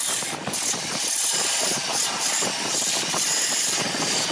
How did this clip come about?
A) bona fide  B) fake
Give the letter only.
A